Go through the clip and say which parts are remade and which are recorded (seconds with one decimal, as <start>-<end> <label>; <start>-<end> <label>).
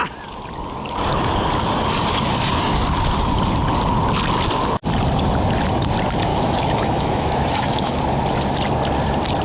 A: 0.0-6.3 recorded; 6.3-8.0 remade; 8.0-9.4 recorded